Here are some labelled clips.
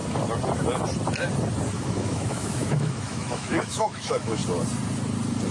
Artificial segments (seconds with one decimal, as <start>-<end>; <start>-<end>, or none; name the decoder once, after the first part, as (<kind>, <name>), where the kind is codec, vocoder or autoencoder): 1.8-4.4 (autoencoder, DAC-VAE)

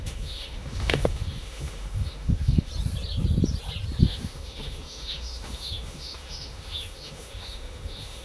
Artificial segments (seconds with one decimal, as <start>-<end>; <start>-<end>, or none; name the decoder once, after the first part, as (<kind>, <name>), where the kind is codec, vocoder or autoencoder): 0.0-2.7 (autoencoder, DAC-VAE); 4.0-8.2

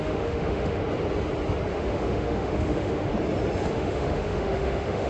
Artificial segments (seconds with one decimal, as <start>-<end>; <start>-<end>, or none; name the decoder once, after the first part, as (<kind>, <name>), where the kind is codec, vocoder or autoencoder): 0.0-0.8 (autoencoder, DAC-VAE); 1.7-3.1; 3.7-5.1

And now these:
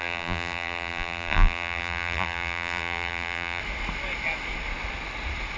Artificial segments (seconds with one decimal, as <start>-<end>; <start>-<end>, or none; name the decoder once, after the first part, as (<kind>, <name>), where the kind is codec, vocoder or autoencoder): 0.0-3.6 (vocoder, BigVGAN v2)

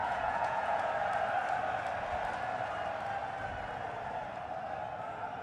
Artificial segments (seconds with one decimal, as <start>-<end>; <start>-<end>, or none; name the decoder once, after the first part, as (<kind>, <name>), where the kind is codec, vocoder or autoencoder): 0.0-0.9 (vocoder, Vocos)

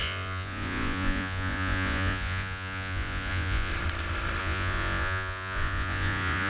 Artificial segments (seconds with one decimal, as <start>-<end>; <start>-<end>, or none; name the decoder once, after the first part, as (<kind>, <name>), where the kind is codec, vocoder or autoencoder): 0.0-3.7 (vocoder, Vocos); 4.4-6.5

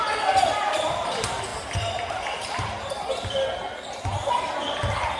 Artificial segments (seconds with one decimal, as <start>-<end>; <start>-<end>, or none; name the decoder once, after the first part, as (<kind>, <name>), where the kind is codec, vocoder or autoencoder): none